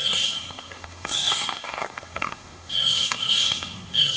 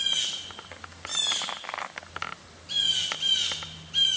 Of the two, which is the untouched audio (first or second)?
second